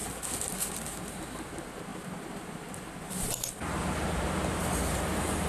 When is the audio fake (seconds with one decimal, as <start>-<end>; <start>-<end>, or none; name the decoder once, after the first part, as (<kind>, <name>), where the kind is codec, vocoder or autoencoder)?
none